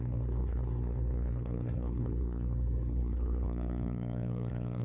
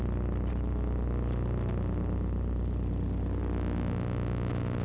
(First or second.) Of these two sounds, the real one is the second